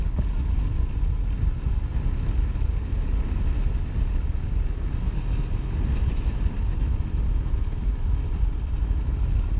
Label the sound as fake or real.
real